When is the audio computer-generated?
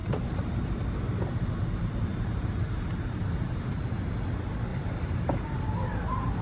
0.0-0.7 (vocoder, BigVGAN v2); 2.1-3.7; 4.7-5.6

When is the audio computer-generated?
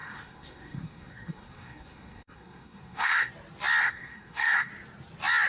0.0-3.3 (codec, SNAC); 3.8-4.7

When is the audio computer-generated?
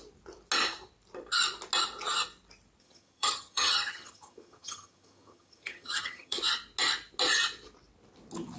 2.8-6.4 (vocoder, HiFi-GAN)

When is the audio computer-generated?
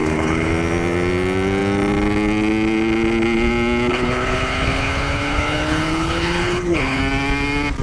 0.0-0.5 (codec, HILCodec); 3.9-7.0